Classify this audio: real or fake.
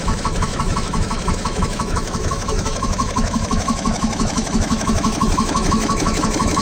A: fake